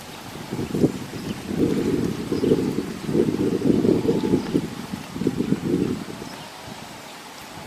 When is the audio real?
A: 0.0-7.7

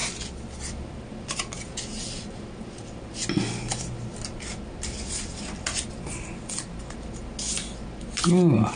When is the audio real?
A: 0.0-8.8